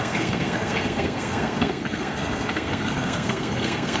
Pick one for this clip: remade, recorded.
remade